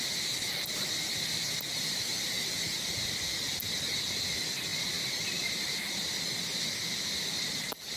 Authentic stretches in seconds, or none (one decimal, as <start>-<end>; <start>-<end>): 0.0-8.0